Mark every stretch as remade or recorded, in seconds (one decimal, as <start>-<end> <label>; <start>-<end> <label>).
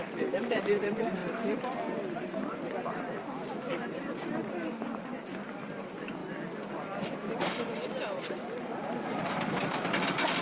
0.0-1.2 remade; 1.2-3.2 recorded; 3.2-6.2 remade; 6.2-8.6 recorded; 8.6-10.4 remade